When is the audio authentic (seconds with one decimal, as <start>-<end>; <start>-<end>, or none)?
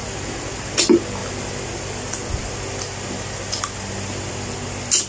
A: 0.0-1.2; 4.3-5.1